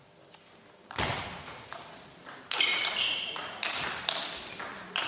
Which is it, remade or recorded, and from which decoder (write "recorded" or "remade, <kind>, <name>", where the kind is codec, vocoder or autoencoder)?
recorded